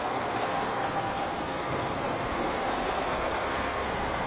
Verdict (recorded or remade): remade